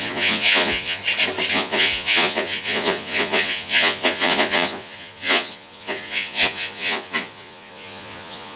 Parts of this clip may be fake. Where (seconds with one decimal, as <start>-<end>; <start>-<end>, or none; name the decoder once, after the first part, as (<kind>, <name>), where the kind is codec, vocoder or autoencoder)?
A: 0.0-1.0 (vocoder, Vocos); 1.5-8.6